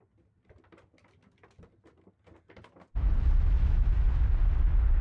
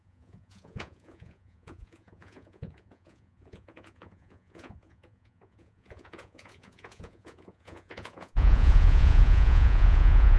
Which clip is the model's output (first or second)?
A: second